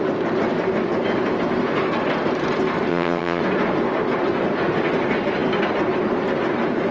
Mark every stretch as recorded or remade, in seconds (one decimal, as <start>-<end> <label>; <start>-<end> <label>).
0.0-2.9 recorded; 2.9-3.4 remade; 3.4-6.9 recorded